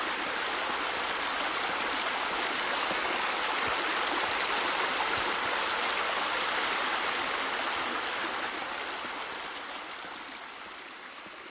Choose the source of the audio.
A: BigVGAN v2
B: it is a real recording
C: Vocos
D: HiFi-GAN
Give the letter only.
B